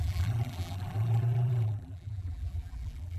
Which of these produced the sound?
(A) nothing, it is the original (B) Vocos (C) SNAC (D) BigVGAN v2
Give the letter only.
D